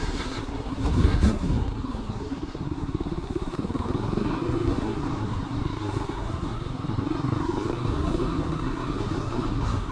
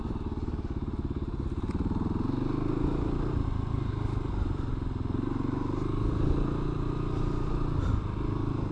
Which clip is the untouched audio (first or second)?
second